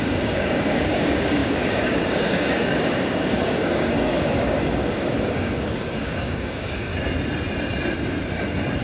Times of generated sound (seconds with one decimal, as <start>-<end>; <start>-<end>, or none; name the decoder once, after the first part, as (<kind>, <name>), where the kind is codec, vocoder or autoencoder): 0.0-6.9 (codec, DAC)